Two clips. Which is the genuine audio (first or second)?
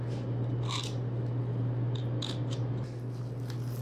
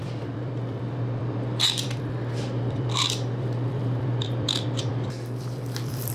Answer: first